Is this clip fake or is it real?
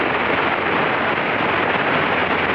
real